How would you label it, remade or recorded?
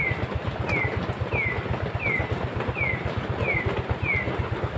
recorded